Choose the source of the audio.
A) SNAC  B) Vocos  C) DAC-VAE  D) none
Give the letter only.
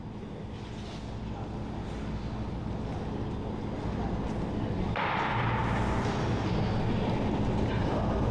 D